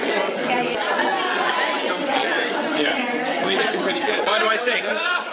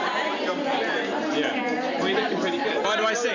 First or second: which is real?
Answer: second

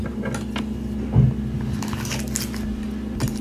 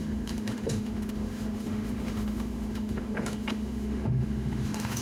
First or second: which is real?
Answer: first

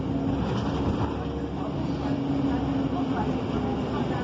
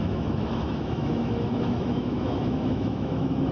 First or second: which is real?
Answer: first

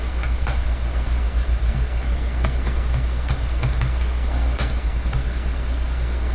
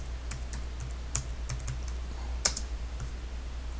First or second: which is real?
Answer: second